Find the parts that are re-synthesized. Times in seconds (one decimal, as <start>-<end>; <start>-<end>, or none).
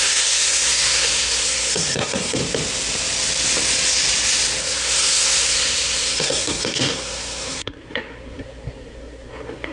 0.0-2.4; 4.6-9.7